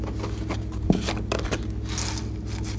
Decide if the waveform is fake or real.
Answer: real